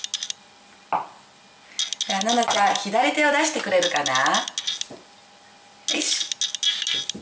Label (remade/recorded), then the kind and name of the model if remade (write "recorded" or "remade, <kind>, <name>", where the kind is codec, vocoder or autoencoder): recorded